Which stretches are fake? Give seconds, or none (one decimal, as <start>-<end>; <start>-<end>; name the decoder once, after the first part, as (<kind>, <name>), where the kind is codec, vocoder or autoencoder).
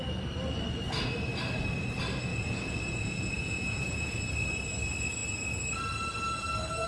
2.3-4.3 (vocoder, Vocos)